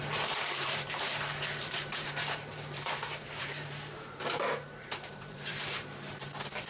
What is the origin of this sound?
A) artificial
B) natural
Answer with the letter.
A